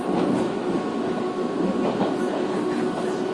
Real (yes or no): yes